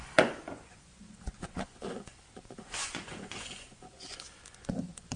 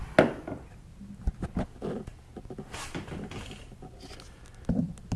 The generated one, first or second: first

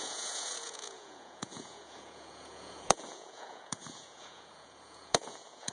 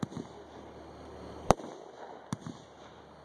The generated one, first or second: first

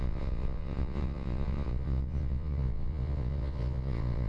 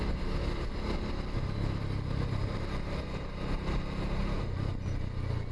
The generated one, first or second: first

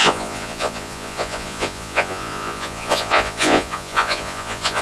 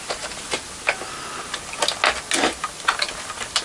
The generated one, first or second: first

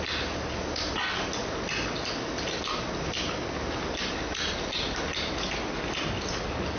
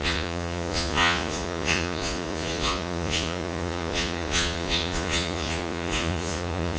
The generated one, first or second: second